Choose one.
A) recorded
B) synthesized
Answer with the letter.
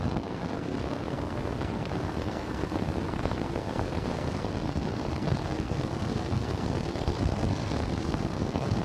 B